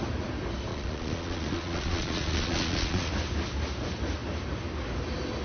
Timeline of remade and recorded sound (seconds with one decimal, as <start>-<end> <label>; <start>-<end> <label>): 0.0-0.7 recorded; 0.7-3.1 remade; 3.1-5.4 recorded